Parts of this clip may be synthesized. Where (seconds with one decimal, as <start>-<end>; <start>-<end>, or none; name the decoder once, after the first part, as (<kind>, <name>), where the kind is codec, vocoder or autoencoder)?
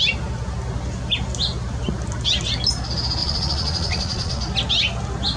3.2-4.4 (vocoder, Vocos)